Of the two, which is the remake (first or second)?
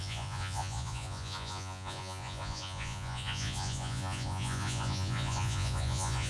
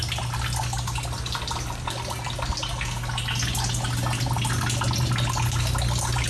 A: first